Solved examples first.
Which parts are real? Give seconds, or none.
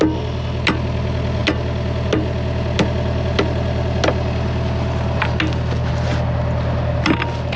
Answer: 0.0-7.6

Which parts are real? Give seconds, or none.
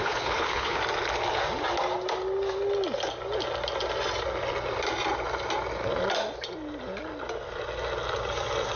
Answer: 0.8-8.8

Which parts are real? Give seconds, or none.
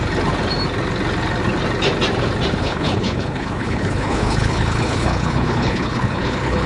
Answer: 0.0-2.6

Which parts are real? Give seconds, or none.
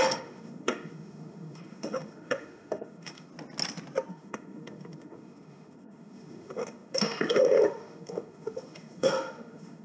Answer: 3.3-4.1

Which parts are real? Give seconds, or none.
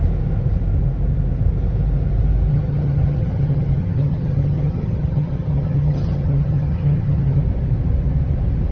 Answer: 0.0-2.5; 7.4-8.7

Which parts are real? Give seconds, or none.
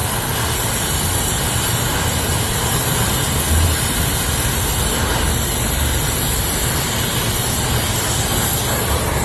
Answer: 0.0-9.2